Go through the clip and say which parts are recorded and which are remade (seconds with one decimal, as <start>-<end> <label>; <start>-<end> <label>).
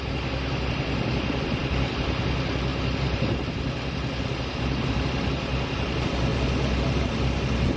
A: 0.0-7.8 recorded